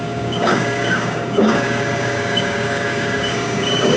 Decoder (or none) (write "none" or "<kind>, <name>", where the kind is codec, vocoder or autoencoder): codec, DAC